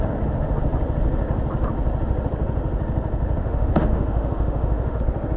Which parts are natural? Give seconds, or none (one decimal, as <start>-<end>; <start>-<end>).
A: 0.0-3.4; 5.0-5.4